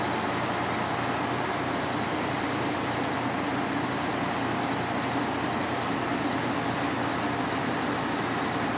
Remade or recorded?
recorded